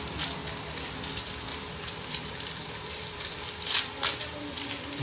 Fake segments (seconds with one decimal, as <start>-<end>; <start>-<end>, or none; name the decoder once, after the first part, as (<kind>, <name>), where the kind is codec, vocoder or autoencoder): 1.5-3.4 (vocoder, BigVGAN v2)